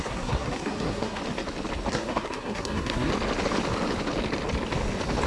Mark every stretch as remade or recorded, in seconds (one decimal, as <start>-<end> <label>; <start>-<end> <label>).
0.0-1.2 remade; 1.2-1.9 recorded; 1.9-3.1 remade; 3.1-5.3 recorded